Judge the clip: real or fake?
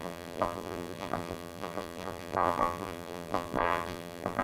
fake